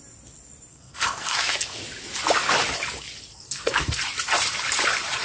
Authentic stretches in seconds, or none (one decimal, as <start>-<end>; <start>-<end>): 0.0-0.7; 1.8-3.3; 4.0-5.2